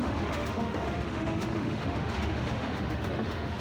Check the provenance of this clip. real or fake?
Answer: fake